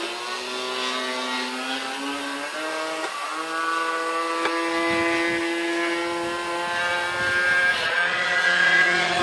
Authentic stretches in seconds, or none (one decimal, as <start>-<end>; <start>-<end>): 0.0-7.7